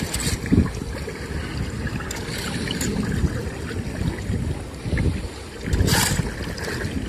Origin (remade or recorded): recorded